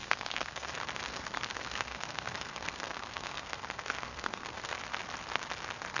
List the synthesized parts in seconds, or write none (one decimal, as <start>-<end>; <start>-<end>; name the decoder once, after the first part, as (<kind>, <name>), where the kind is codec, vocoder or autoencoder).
0.0-0.7 (codec, SNAC); 1.1-4.7